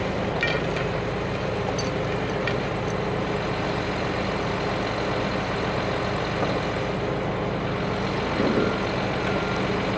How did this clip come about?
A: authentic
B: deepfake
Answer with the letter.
A